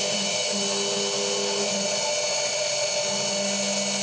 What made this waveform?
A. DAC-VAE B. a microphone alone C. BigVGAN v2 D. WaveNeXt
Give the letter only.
B